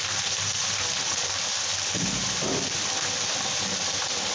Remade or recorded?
recorded